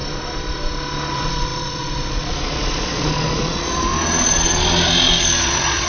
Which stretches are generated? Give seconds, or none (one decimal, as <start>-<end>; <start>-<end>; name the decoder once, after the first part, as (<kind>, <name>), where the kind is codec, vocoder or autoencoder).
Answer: 1.1-3.9 (vocoder, Vocos); 5.4-5.9